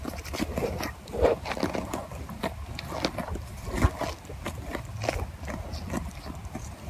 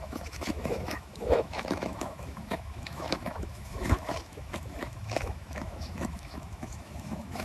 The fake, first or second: second